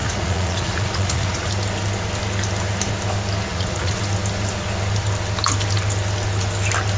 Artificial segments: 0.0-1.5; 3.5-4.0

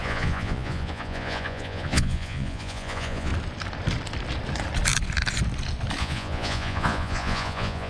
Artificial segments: 0.0-3.3; 6.0-7.9

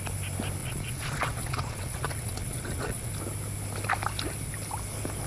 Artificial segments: 0.6-3.1

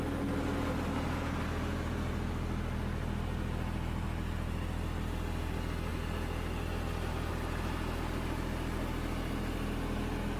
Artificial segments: none

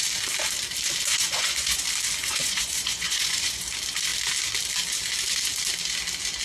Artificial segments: 1.1-1.8; 2.2-3.6

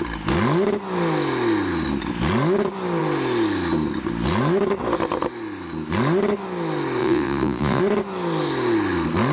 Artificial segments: 7.0-7.8

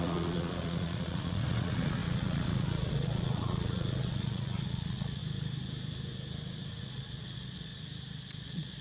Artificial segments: 0.0-5.2; 6.8-7.7; 8.4-8.8